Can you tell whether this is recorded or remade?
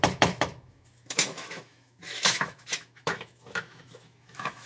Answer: remade